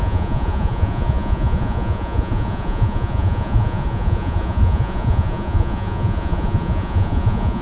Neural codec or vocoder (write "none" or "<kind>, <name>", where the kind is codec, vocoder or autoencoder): vocoder, Vocos